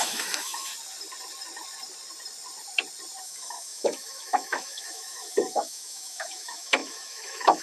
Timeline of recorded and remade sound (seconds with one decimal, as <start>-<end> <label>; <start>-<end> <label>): 0.0-0.7 remade; 0.7-3.2 recorded; 3.2-7.6 remade